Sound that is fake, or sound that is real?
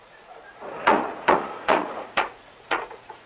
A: fake